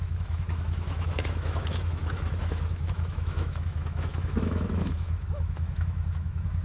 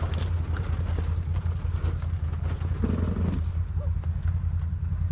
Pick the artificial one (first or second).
first